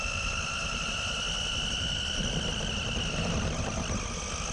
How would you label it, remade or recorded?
recorded